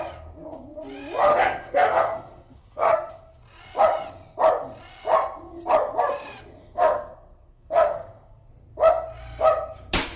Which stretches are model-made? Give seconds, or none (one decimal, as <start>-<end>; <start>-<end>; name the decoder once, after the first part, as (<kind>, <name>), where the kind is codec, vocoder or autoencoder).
1.3-3.1 (codec, SNAC); 6.6-8.5